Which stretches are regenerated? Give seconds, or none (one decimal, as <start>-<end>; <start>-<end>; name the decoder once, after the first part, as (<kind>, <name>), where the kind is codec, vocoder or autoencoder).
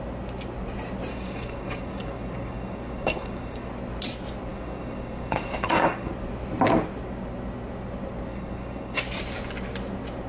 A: 1.1-3.7 (codec, DAC); 4.5-6.1; 8.3-9.0